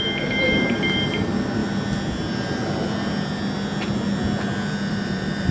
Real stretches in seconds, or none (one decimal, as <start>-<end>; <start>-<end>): 1.6-4.9